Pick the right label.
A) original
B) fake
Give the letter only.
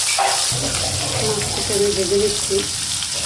A